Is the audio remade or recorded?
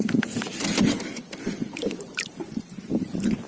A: remade